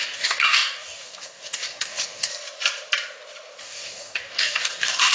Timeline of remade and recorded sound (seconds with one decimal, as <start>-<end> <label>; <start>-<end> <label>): 0.0-2.3 remade; 2.3-3.6 recorded; 3.6-5.1 remade